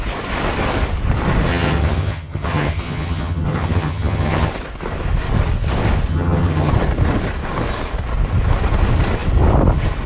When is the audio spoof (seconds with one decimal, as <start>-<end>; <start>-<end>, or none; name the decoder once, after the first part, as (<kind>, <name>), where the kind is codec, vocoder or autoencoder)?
1.5-4.5 (vocoder, HiFi-GAN); 6.1-6.7